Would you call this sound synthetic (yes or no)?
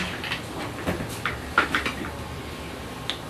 no